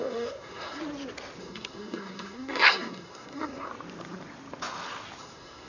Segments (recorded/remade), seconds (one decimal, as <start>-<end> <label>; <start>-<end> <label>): 0.0-0.8 remade; 0.8-1.4 recorded; 1.4-3.7 remade; 3.7-5.2 recorded; 5.2-5.7 remade